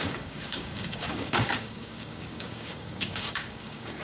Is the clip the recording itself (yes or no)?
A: no